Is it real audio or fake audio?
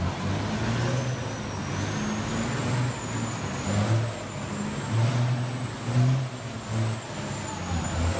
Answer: real